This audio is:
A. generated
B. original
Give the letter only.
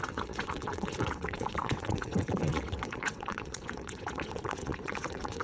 A